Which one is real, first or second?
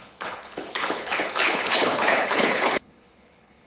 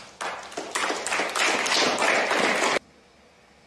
second